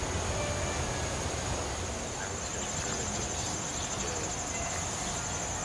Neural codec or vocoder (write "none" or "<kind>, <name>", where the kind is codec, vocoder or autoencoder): none